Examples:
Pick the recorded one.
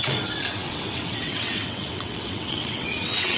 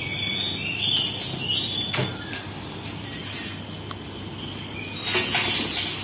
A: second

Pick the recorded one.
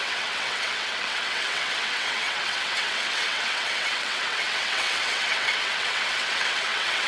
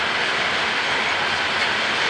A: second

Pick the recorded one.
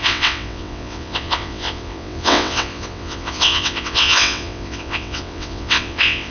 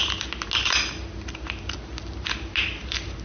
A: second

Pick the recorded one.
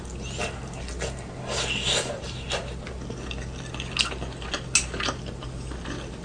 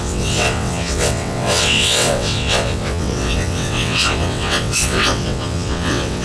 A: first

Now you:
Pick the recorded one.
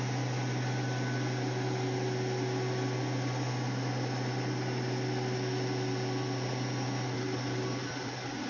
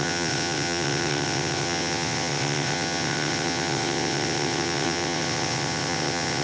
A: first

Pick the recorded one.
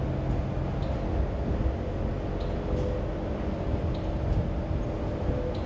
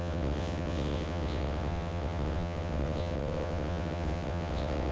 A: first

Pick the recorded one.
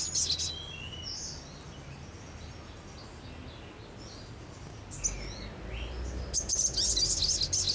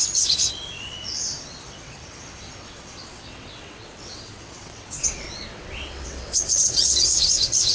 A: first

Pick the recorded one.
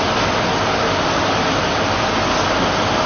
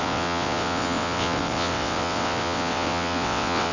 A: first